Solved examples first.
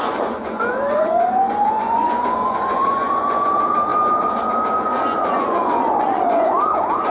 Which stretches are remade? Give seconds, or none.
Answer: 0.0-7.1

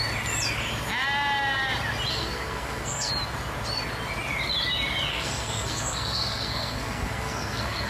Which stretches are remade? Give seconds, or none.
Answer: 2.1-3.1; 5.1-7.9

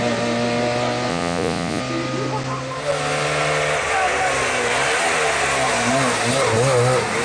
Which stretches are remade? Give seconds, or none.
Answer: 1.1-1.8

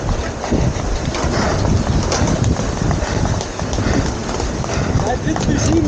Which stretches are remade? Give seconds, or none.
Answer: none

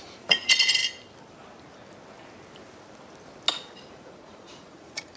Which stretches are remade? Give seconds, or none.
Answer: 0.0-0.8; 3.9-5.2

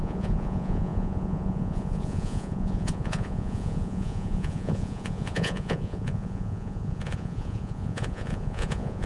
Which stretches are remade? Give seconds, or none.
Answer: 0.0-9.1